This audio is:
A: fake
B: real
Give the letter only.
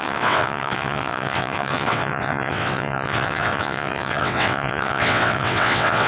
A